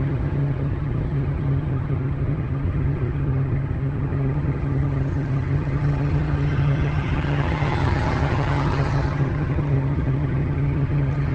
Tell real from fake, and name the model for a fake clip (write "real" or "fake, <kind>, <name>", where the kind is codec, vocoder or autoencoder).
fake, vocoder, HiFi-GAN